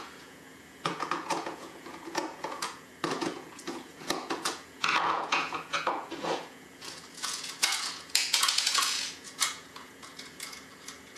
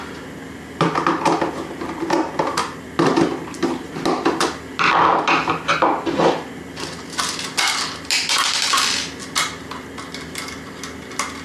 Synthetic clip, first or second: first